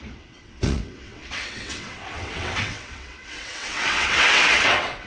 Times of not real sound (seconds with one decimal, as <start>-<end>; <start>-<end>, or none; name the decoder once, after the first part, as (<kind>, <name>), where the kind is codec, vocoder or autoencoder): 0.0-5.1 (vocoder, WaveNeXt)